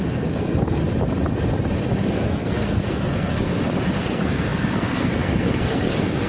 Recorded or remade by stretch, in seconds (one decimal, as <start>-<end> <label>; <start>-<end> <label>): 0.0-0.8 remade; 0.8-2.1 recorded; 2.1-3.5 remade; 3.5-4.0 recorded; 4.0-6.3 remade